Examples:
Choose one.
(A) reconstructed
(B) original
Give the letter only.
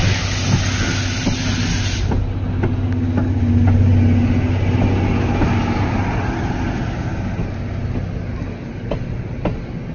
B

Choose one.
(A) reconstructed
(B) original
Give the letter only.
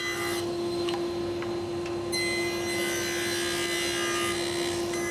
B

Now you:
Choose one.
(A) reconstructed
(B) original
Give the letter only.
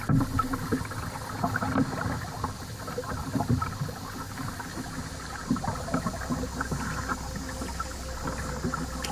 B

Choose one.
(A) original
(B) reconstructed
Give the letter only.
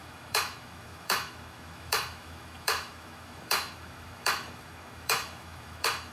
B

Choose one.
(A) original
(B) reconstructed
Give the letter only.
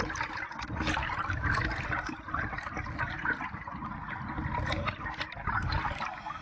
A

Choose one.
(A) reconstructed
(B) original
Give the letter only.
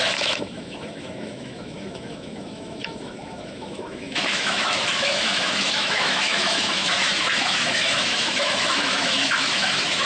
A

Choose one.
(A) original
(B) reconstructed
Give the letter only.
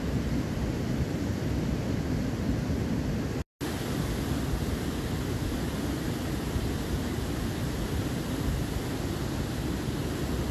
A